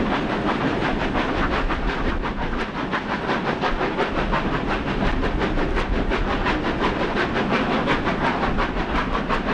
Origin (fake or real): real